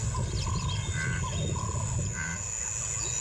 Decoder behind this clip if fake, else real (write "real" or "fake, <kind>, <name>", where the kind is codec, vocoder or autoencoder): real